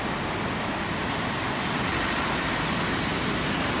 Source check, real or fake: real